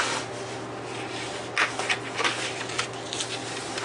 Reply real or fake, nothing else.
real